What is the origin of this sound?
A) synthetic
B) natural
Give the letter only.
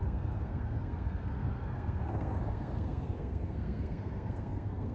A